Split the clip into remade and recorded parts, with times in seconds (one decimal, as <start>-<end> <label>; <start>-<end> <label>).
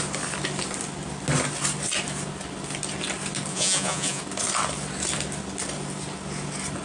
0.0-3.5 recorded; 3.5-4.2 remade; 4.2-6.8 recorded